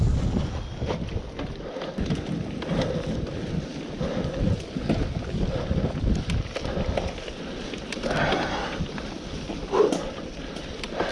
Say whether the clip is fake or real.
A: real